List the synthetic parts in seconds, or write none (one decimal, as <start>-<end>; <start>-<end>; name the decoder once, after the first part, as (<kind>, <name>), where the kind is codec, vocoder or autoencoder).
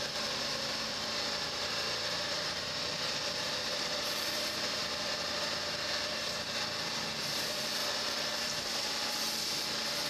0.0-4.8 (vocoder, BigVGAN v2); 7.2-7.8; 8.4-10.1